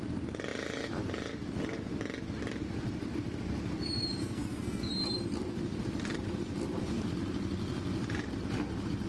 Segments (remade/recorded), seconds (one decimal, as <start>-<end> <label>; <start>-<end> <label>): 0.0-4.2 recorded; 4.2-4.9 remade; 4.9-9.1 recorded